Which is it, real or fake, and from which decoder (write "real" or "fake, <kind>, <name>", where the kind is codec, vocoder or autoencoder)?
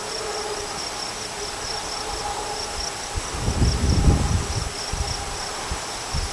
real